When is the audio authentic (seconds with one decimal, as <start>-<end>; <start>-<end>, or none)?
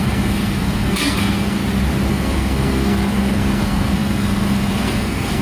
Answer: 1.6-2.1